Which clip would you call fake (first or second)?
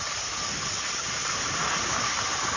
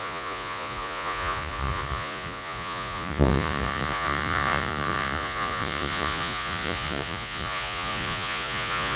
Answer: second